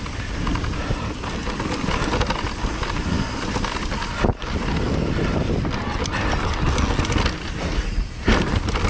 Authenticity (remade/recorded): recorded